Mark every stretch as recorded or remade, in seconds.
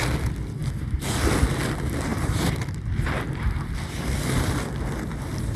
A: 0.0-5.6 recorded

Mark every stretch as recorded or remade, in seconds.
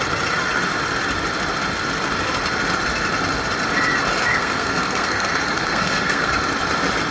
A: 0.0-4.3 recorded; 4.3-6.3 remade; 6.3-7.1 recorded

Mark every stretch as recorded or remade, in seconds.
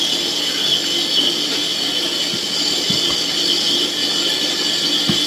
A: 0.0-5.3 recorded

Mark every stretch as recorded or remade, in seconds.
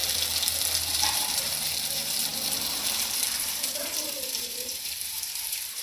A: 0.0-0.9 recorded; 0.9-5.8 remade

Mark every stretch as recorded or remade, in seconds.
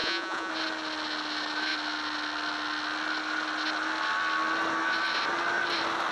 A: 0.0-0.5 remade; 0.5-6.1 recorded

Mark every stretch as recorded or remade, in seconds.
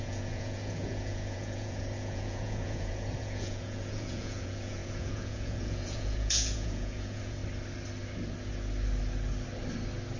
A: 0.0-7.4 remade; 7.4-10.2 recorded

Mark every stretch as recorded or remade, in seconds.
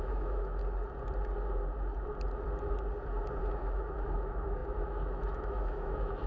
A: 0.0-0.6 remade; 0.6-3.4 recorded; 3.4-6.3 remade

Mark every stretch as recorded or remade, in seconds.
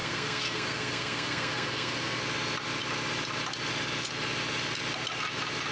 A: 0.0-2.2 remade; 2.2-5.7 recorded